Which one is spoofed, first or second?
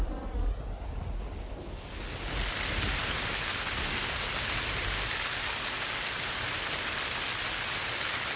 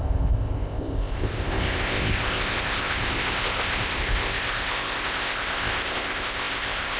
second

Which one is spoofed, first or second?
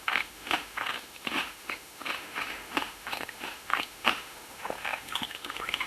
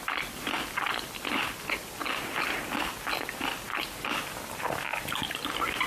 first